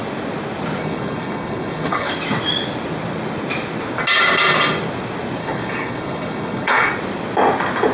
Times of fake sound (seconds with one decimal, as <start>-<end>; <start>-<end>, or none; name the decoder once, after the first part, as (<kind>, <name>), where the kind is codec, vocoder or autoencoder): 0.8-2.1 (codec, HILCodec); 5.4-6.9